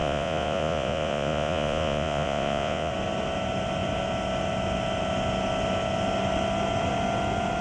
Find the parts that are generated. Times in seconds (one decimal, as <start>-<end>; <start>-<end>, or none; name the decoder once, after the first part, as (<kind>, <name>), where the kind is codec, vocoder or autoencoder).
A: 0.0-2.9 (vocoder, Vocos)